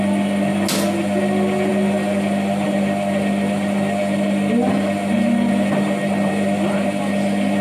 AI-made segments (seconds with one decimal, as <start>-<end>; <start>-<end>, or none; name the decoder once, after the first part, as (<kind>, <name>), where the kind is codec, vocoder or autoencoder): none